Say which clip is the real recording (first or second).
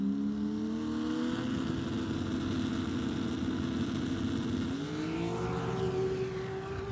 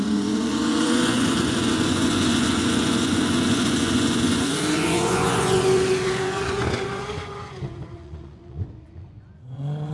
first